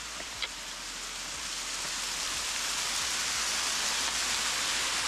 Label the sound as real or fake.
real